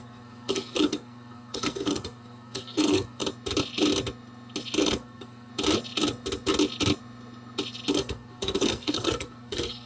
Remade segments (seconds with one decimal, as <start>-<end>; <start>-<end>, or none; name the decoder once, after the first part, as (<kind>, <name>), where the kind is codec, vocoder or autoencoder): 0.0-3.2 (codec, SNAC); 4.8-5.5; 7.9-9.9